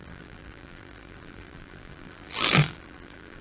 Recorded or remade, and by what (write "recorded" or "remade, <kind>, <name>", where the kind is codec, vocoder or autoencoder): remade, vocoder, BigVGAN v2